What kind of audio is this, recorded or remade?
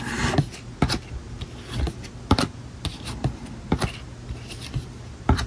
recorded